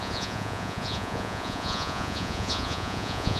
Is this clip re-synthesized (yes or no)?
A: yes